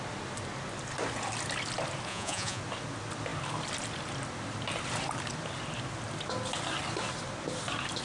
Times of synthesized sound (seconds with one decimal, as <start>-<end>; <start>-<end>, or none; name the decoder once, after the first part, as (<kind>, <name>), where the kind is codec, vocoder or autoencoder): 2.1-2.6 (vocoder, Vocos)